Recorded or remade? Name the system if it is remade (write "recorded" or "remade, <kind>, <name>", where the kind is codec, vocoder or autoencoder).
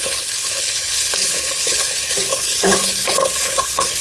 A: remade, codec, HILCodec